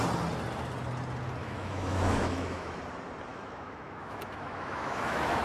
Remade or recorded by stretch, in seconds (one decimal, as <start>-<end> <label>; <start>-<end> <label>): 0.0-1.4 recorded; 1.4-2.8 remade; 2.8-3.3 recorded; 3.3-5.4 remade